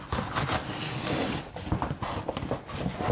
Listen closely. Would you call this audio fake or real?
real